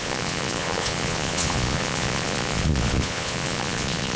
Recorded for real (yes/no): no